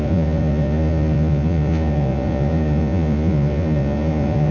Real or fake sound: fake